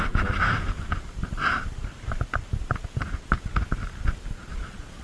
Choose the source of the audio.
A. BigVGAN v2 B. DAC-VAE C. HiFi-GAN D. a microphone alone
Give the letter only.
D